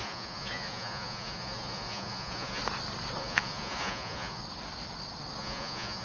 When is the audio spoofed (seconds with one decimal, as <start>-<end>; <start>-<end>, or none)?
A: 0.0-2.6; 3.2-4.4; 5.4-6.0